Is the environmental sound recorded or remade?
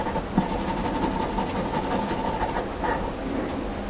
recorded